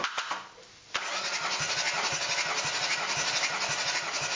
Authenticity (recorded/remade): recorded